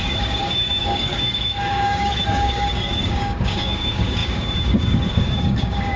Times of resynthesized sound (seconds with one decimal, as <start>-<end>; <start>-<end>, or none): 0.0-6.0